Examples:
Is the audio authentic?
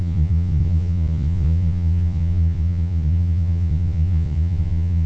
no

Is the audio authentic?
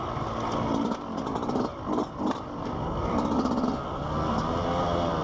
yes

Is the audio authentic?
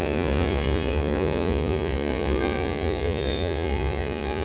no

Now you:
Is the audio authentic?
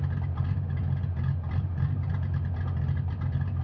yes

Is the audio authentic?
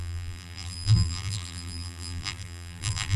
no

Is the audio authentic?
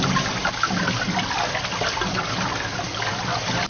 yes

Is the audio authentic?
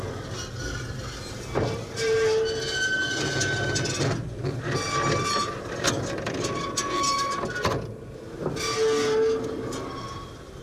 yes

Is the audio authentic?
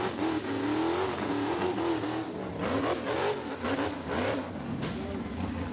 yes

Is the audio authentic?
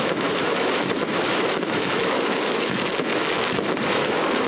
no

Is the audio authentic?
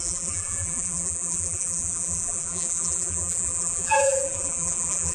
no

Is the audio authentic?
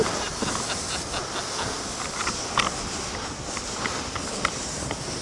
yes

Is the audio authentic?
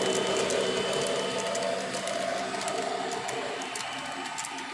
yes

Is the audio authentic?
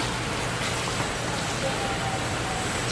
yes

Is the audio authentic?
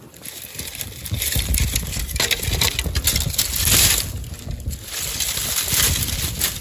yes